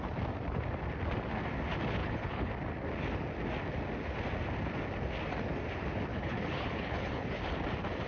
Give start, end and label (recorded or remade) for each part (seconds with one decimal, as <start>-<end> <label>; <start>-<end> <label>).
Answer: 0.0-2.0 recorded; 2.0-2.5 remade; 2.5-6.1 recorded; 6.1-7.4 remade; 7.4-8.1 recorded